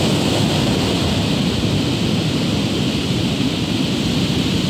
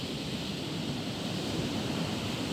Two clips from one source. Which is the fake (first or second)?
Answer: second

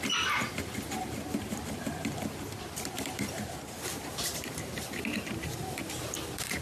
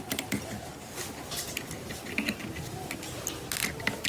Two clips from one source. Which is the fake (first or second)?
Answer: first